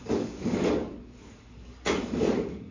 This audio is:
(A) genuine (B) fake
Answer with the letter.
B